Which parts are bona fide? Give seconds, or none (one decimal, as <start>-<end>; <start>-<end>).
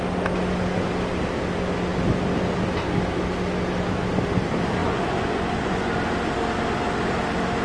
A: 0.0-4.8; 5.9-7.6